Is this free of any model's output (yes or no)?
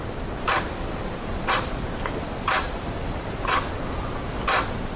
no